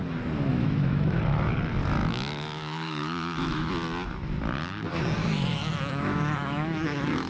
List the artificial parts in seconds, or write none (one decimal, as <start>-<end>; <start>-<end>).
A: 0.5-1.2; 2.0-3.7; 5.2-7.3